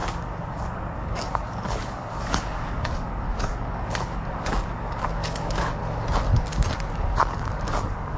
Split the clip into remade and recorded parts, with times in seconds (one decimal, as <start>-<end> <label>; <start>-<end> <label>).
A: 0.0-5.8 remade; 5.8-6.9 recorded; 6.9-8.2 remade